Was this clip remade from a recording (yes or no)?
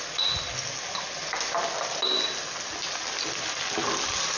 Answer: no